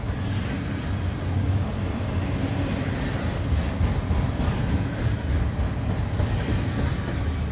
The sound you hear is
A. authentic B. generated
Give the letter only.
A